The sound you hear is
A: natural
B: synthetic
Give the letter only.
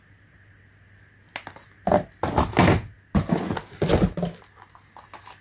A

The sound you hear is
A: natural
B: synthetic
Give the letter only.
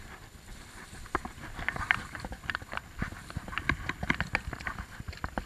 A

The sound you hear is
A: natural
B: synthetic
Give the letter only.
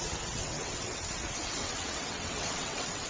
B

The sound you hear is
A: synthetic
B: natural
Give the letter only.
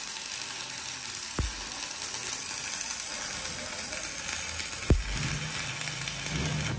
B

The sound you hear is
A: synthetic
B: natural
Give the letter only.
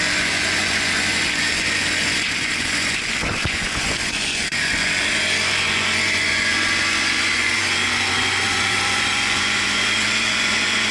A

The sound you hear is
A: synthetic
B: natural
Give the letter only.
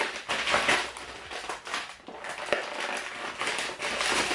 B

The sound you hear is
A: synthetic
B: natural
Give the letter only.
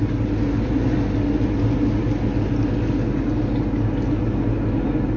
B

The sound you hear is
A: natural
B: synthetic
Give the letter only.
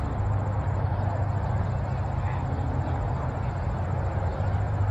A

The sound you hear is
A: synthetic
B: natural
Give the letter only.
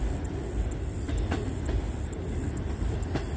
B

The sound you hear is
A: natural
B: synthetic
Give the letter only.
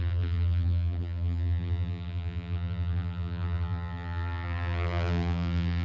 B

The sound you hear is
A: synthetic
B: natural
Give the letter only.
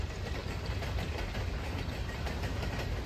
B